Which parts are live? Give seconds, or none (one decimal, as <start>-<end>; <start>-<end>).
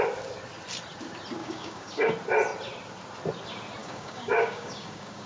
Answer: 0.0-1.4; 2.1-3.8